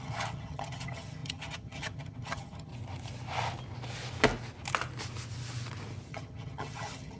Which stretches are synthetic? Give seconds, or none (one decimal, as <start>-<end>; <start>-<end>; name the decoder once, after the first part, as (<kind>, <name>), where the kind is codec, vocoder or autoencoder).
0.0-2.7 (vocoder, HiFi-GAN); 6.1-7.2